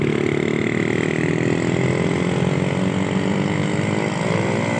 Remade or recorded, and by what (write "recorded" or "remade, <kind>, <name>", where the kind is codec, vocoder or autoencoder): recorded